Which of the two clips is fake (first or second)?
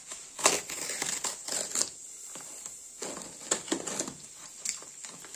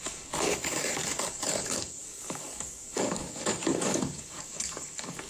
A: second